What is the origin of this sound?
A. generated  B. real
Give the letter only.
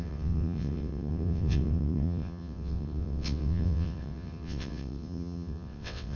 A